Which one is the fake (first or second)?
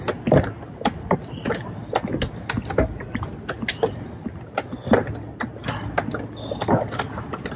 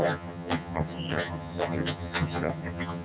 second